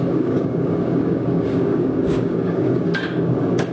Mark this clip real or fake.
fake